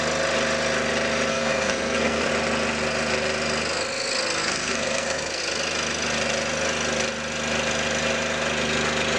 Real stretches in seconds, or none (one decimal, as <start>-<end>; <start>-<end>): 0.0-1.3; 2.3-4.4; 5.4-9.2